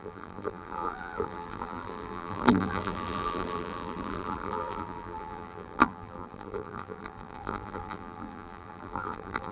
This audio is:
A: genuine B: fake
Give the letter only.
B